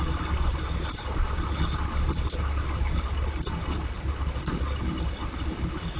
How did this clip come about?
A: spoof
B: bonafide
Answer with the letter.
B